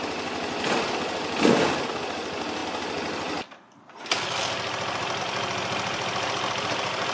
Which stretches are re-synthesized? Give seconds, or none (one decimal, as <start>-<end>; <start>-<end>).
none